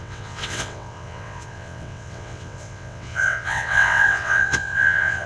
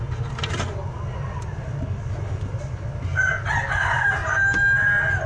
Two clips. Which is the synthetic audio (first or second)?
first